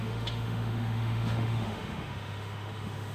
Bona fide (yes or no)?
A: no